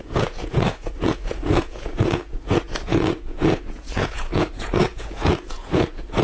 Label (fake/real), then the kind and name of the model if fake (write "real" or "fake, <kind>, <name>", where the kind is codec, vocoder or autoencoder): fake, vocoder, Vocos